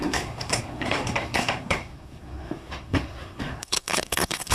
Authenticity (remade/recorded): remade